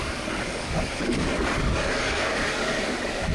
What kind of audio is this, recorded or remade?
remade